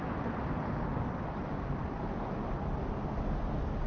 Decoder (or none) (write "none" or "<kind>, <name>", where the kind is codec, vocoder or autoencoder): none